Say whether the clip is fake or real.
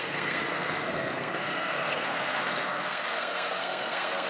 fake